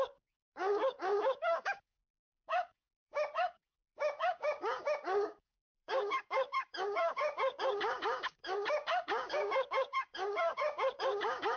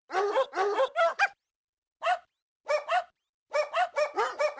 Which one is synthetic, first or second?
first